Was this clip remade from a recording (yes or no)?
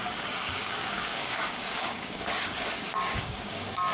yes